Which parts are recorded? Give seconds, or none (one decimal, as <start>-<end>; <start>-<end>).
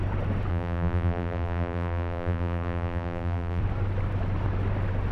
0.0-0.5; 3.6-5.1